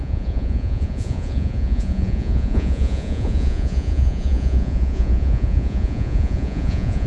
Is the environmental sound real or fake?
fake